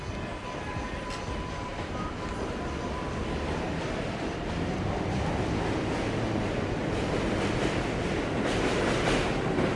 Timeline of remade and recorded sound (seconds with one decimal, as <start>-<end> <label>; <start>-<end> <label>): 0.0-9.8 recorded